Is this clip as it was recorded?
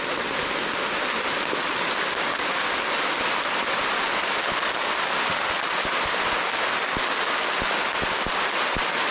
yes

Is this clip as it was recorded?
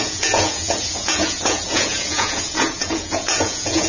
no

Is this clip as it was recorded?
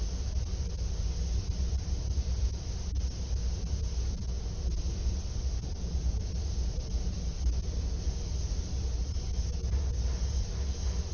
yes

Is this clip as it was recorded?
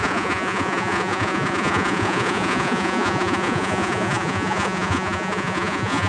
no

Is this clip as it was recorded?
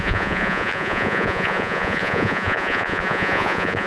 no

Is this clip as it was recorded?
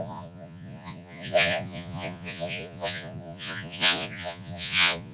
no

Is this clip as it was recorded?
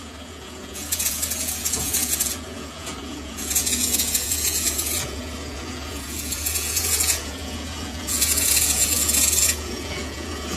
no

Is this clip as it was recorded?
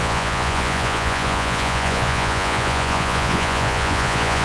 no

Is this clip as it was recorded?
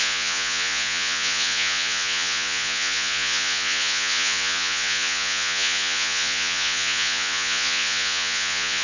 no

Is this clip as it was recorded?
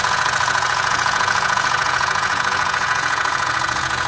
no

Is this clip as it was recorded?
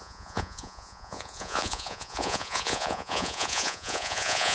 no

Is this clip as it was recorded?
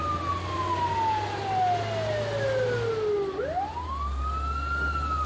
yes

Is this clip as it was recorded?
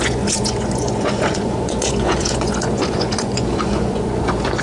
no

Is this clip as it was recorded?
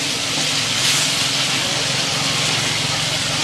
yes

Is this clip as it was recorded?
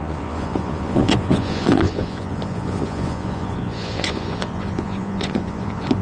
no